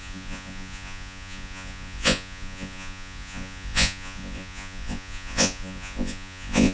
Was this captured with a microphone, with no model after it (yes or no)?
no